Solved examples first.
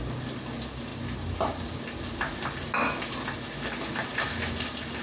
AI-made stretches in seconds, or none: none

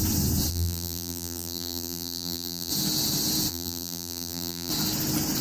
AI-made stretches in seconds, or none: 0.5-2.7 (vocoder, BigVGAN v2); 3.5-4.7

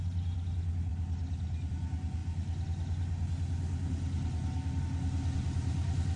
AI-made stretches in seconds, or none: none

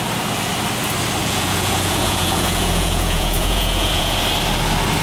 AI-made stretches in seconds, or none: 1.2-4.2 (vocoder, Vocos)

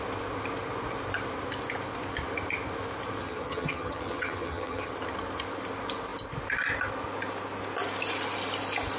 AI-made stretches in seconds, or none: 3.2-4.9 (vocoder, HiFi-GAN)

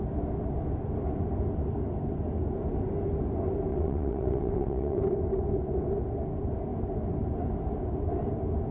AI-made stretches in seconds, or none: 3.7-5.0 (vocoder, WaveNeXt)